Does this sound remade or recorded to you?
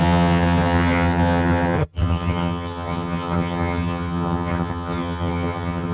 remade